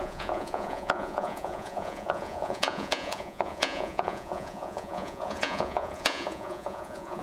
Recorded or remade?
remade